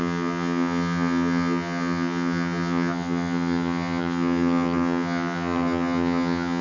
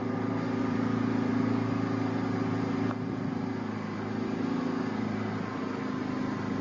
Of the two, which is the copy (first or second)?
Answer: first